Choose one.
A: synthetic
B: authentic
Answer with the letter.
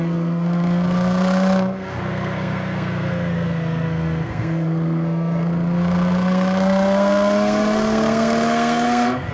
A